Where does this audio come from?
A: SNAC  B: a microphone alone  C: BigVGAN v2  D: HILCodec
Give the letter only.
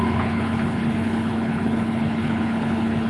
D